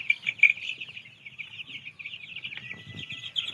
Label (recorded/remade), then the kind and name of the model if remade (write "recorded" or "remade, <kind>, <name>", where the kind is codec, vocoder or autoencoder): recorded